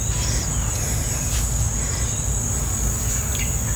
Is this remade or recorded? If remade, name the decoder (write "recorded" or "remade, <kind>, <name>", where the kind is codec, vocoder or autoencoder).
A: recorded